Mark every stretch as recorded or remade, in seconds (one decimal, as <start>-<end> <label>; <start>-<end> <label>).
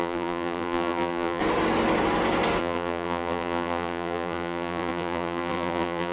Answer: 0.0-1.4 remade; 1.4-2.6 recorded; 2.6-6.1 remade